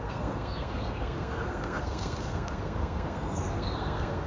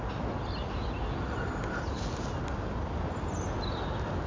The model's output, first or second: first